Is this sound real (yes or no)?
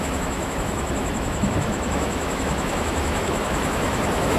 no